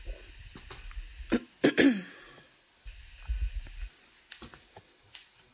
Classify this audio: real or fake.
real